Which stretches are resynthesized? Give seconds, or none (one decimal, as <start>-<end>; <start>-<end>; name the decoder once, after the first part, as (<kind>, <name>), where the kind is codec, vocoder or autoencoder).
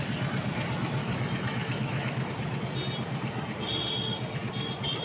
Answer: 1.0-2.3 (autoencoder, DAC-VAE)